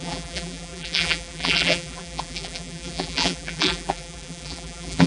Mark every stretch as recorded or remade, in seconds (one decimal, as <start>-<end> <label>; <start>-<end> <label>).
0.0-5.1 remade